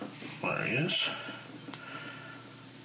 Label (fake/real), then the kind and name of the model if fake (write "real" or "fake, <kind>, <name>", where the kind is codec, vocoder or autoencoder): real